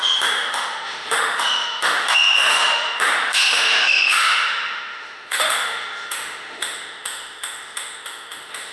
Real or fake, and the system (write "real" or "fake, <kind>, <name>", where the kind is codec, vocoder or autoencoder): fake, autoencoder, DAC-VAE